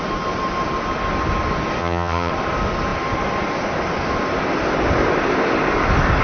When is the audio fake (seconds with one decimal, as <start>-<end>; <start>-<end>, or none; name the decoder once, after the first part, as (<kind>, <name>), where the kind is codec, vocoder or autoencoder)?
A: 1.8-2.3 (vocoder, HiFi-GAN)